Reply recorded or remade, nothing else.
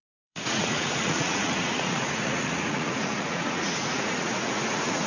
remade